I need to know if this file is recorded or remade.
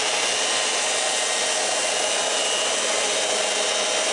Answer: recorded